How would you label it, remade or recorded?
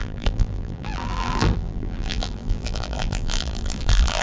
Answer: remade